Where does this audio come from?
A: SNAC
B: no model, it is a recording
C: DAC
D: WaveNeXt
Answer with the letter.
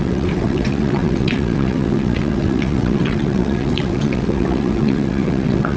D